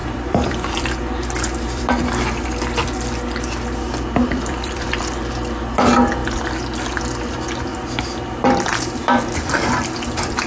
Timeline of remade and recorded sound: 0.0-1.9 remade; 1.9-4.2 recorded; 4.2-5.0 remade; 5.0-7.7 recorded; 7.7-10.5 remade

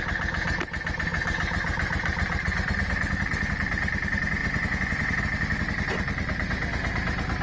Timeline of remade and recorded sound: 0.0-4.4 recorded; 4.4-5.2 remade; 5.2-7.4 recorded

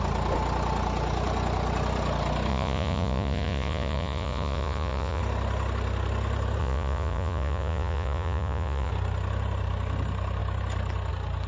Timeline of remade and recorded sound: 0.0-2.5 recorded; 2.5-5.2 remade; 5.2-6.6 recorded; 6.6-8.9 remade; 8.9-11.5 recorded

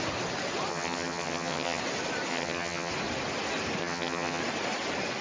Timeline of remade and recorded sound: 0.0-0.7 recorded; 0.7-1.8 remade; 1.8-2.3 recorded; 2.3-2.9 remade; 2.9-3.8 recorded; 3.8-4.4 remade; 4.4-5.2 recorded

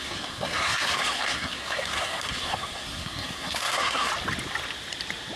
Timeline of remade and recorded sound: 0.0-4.1 remade; 4.1-5.4 recorded

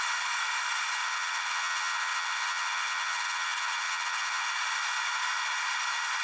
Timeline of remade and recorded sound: 0.0-1.0 recorded; 1.0-4.5 remade; 4.5-6.2 recorded

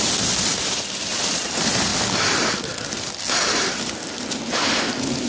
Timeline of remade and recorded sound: 0.0-5.3 recorded